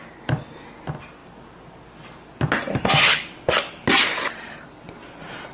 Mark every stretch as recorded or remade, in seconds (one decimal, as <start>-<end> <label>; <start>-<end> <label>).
0.0-5.5 recorded